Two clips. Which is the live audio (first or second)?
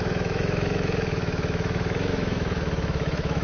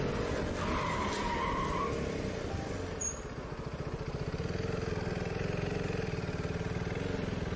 second